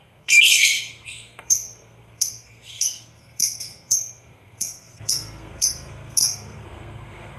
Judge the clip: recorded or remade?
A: remade